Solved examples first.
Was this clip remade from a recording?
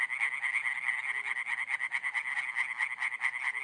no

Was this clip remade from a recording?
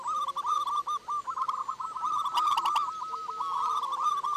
no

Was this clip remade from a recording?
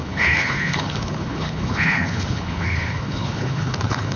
yes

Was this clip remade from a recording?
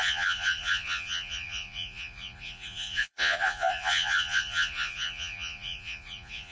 yes